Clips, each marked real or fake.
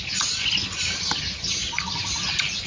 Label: real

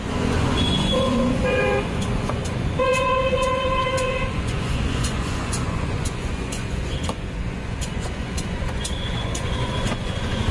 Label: fake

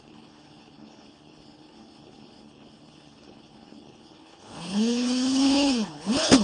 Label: fake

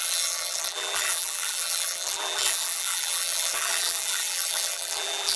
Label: fake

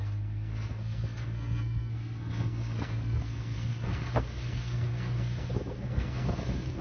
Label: fake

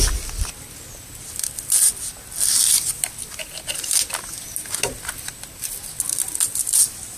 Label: real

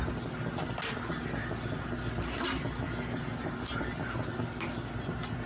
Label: real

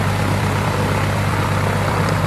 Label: fake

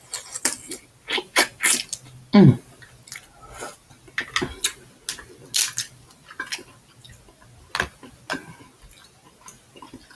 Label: real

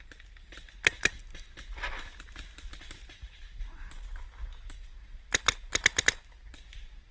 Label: real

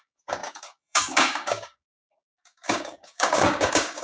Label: fake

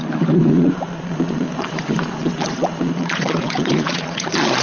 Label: fake